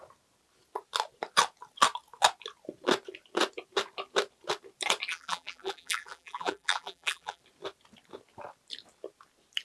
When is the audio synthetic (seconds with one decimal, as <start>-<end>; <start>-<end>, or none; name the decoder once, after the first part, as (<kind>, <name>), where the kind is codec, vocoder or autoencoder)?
5.1-7.4 (vocoder, BigVGAN v2)